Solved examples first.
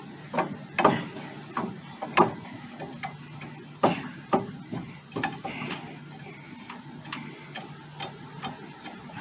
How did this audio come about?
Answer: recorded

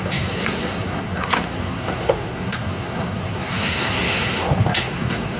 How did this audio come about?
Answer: remade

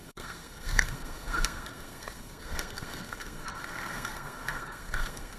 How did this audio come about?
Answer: remade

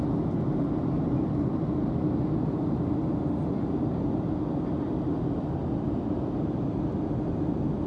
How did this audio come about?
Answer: recorded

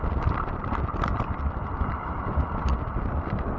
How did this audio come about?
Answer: recorded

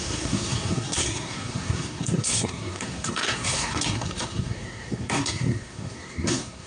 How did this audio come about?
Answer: remade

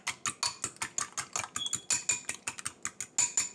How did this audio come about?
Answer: recorded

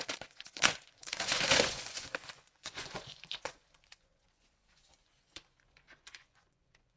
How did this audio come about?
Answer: remade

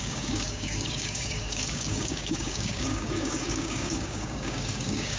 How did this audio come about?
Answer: remade